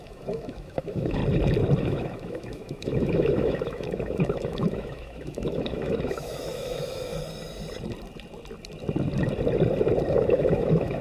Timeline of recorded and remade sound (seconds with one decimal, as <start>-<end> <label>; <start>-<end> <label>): 0.0-1.2 remade; 1.2-1.8 recorded; 1.8-7.1 remade; 7.1-10.1 recorded; 10.1-11.0 remade